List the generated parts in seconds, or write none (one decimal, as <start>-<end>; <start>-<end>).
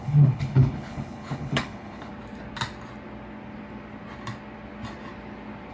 0.0-2.1